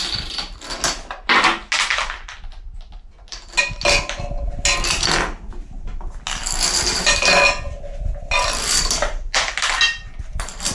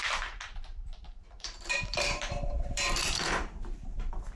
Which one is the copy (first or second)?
second